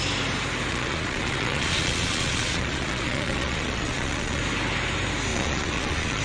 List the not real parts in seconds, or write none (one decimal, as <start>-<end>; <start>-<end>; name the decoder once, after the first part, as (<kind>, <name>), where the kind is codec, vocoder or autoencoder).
0.7-4.4 (vocoder, Vocos); 5.3-6.2